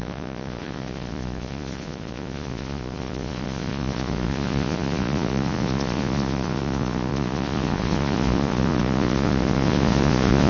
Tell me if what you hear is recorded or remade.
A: remade